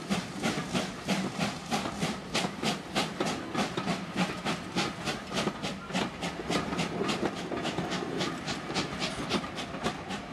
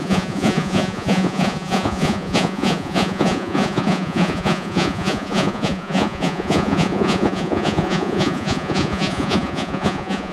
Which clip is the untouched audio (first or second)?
first